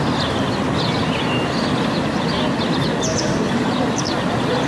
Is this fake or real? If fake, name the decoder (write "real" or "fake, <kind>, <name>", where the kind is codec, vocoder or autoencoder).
real